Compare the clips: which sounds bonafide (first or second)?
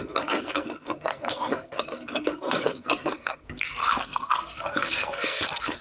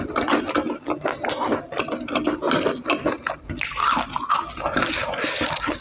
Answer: second